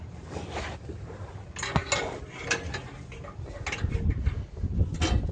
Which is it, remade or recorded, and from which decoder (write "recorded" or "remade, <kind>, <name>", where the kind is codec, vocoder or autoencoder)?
recorded